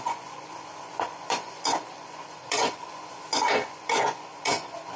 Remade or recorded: remade